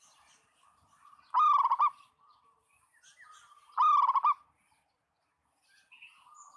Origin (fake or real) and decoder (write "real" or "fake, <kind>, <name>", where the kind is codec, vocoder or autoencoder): real